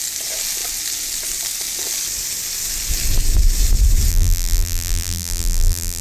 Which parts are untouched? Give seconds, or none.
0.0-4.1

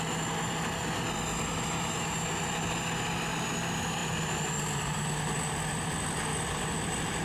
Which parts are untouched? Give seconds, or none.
0.0-4.0; 5.2-6.3

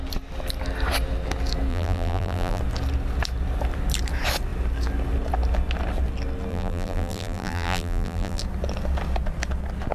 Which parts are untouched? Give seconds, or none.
0.0-1.7; 2.6-6.5; 8.4-9.9

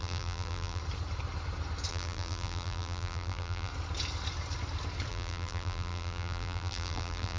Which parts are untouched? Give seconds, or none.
0.8-1.9; 3.7-5.1